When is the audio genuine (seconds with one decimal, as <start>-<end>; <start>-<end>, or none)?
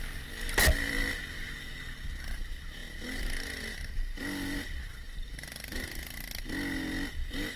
0.0-7.6